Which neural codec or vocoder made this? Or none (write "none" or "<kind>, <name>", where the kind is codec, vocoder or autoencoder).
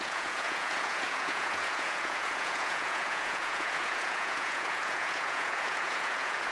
vocoder, Vocos